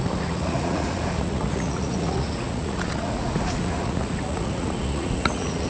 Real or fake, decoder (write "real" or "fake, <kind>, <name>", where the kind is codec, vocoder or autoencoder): fake, vocoder, Vocos